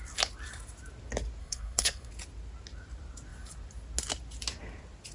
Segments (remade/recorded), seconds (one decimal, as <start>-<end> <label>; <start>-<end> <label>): 0.0-1.4 recorded; 1.4-2.1 remade; 2.1-5.1 recorded